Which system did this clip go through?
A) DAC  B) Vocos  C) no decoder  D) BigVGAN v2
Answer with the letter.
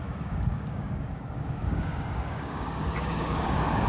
A